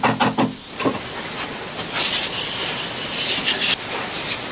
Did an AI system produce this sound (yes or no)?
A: no